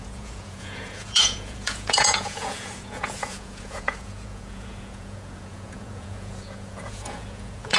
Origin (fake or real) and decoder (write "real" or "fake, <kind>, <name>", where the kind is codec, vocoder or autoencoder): fake, vocoder, Vocos